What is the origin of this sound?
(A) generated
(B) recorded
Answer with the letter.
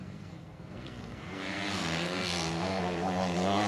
A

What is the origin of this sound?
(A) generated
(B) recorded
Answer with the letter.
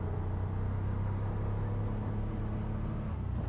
B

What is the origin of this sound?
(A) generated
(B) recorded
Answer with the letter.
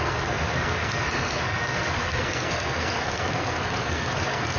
A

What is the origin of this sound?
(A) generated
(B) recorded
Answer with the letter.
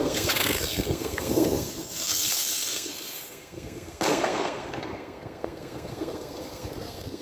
A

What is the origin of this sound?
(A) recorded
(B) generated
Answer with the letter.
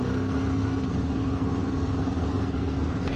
B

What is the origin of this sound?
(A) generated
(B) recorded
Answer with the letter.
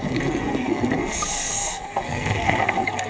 A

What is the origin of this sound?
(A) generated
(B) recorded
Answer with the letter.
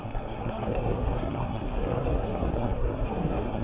A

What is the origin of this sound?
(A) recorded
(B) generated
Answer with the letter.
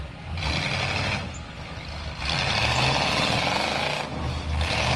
A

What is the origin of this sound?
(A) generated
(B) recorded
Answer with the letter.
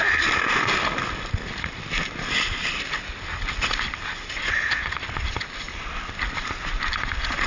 B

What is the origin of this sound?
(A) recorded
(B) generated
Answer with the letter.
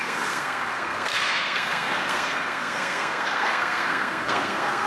B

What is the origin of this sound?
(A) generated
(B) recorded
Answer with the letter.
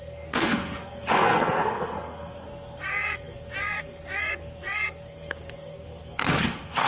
A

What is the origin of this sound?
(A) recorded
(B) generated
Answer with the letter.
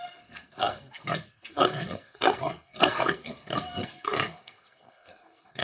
B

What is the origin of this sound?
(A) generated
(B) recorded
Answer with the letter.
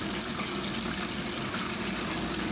B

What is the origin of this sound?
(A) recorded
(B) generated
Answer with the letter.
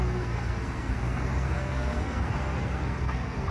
B